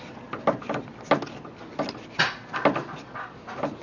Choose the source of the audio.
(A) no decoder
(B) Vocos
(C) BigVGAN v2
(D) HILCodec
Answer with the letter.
A